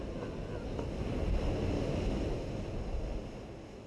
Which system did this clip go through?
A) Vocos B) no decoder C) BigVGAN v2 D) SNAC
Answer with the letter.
B